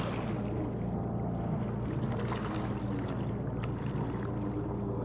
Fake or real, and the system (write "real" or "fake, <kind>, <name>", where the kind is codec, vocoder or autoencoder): real